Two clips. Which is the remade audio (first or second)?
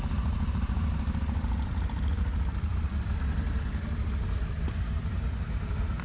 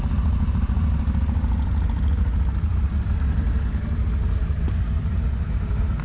first